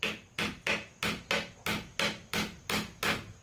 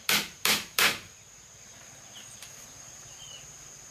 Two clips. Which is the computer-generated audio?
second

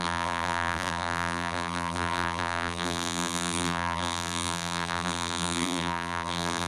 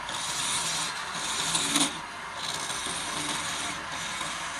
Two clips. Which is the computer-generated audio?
first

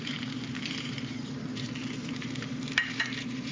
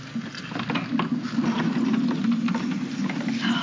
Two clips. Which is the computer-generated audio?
first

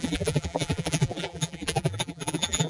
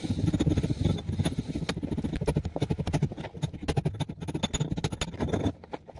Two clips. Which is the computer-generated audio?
first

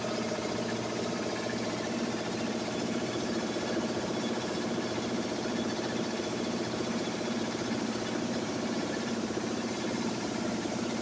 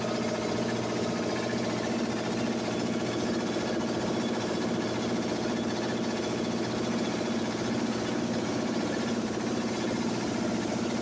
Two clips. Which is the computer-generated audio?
first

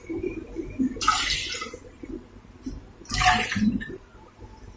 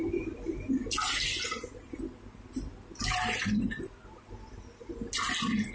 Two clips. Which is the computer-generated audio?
first